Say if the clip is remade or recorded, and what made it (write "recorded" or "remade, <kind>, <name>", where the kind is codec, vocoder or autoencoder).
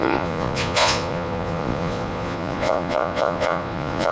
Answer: remade, vocoder, Vocos